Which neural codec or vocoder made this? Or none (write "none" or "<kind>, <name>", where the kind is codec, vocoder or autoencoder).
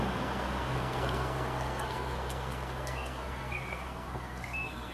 codec, SNAC